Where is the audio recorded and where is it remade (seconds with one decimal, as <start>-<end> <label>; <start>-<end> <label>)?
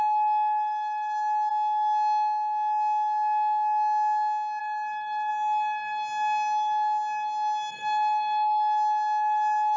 0.0-1.5 remade; 1.5-4.6 recorded; 4.6-5.3 remade; 5.3-7.7 recorded; 7.7-9.8 remade